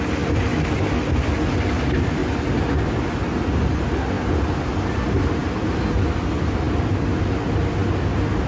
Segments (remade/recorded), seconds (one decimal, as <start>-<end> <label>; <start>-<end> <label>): 0.0-8.5 recorded